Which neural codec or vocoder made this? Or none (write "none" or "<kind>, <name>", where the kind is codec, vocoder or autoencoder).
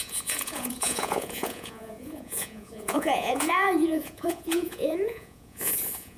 vocoder, Vocos